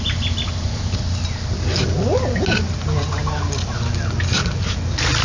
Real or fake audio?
real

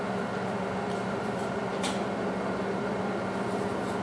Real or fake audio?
real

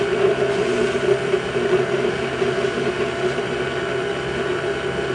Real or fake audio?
real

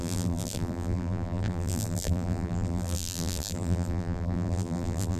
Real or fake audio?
fake